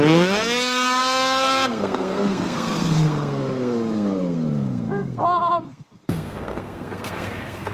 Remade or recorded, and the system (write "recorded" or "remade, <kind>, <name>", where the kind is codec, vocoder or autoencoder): remade, codec, SNAC